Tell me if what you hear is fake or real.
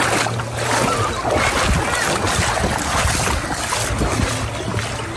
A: real